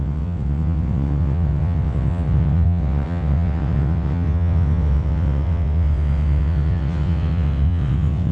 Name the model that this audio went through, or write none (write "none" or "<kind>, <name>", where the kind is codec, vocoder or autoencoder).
vocoder, WaveNeXt